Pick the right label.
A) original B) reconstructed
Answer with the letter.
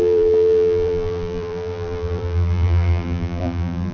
B